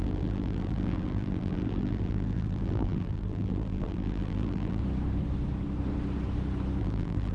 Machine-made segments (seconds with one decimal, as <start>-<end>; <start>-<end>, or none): 0.0-4.8; 6.8-7.3